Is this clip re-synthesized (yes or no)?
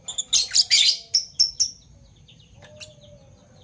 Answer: no